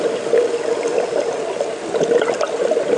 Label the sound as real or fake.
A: real